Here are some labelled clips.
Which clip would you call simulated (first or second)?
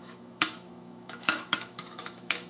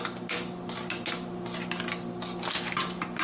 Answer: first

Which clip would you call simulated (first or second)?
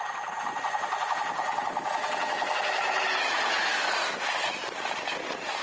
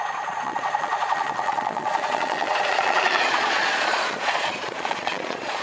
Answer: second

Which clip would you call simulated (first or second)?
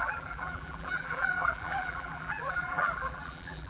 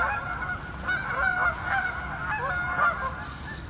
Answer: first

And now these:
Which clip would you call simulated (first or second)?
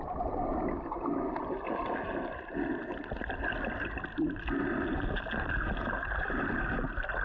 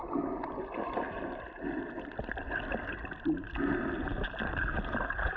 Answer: first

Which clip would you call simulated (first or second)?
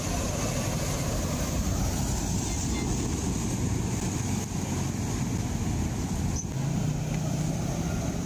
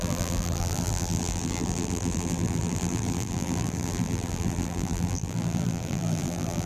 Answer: second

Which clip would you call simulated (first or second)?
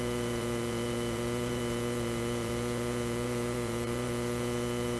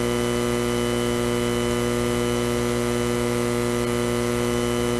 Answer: first